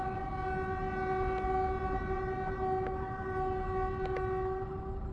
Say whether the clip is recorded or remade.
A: recorded